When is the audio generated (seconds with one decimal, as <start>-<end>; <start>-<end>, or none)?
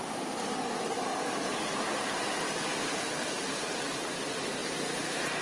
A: 0.0-5.4